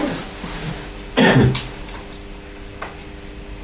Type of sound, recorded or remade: recorded